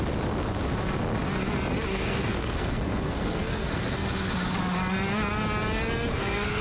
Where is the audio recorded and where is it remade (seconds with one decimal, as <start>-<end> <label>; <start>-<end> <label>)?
0.0-1.9 recorded; 1.9-4.3 remade; 4.3-6.1 recorded; 6.1-6.6 remade